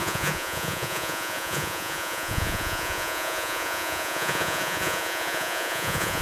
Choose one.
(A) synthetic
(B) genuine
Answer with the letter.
A